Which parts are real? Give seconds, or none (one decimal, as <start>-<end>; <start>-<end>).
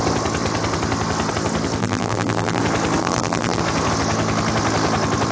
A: 0.0-1.8; 2.6-3.0; 3.6-5.3